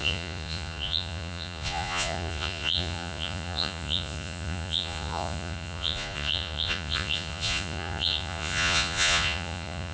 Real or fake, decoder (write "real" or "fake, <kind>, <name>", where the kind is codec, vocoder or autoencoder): fake, vocoder, Vocos